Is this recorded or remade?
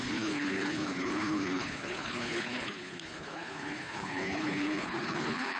remade